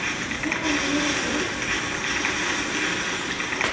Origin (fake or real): real